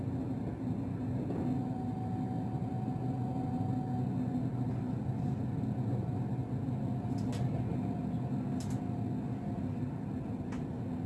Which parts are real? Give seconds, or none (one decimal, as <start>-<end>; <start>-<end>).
0.0-11.1